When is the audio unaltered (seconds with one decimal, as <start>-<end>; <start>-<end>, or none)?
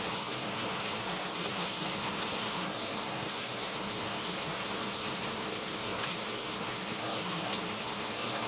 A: none